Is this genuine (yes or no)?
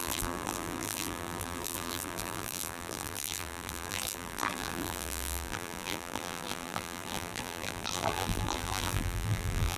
no